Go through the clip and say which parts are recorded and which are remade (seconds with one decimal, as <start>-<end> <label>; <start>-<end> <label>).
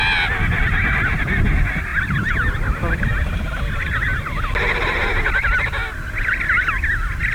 0.0-7.3 recorded